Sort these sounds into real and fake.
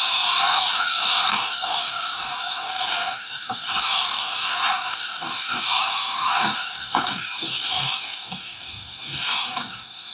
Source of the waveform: fake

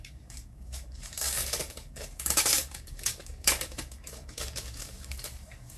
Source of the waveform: fake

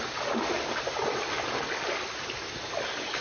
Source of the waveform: real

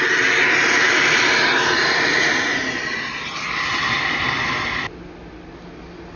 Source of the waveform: real